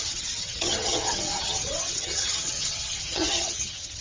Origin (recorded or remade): remade